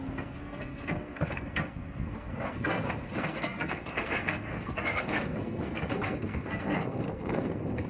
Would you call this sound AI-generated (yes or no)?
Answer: yes